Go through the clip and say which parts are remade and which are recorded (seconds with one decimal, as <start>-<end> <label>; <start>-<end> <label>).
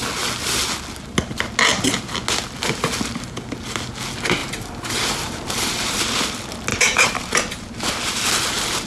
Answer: 0.0-4.4 recorded; 4.4-6.0 remade; 6.0-6.7 recorded; 6.7-7.4 remade; 7.4-8.9 recorded